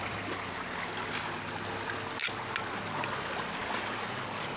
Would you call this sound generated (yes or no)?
no